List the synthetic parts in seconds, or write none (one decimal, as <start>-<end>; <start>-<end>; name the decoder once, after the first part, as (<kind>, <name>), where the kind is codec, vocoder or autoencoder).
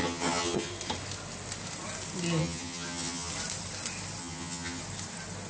0.0-0.7 (vocoder, HiFi-GAN); 2.4-3.3; 4.2-4.8